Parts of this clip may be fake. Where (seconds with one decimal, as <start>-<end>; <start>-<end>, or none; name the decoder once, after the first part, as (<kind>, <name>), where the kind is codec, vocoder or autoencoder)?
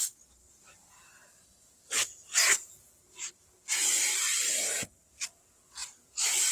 none